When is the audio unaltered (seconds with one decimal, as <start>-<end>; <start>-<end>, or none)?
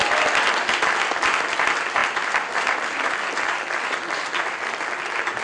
0.0-5.4